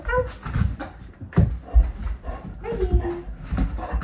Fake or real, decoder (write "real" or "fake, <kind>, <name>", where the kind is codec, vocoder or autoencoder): real